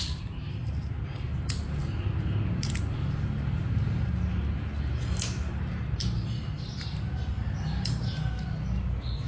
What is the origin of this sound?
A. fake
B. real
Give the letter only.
B